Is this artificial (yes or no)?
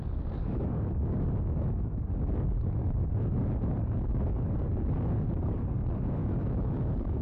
yes